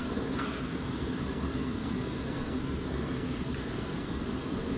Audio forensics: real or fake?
fake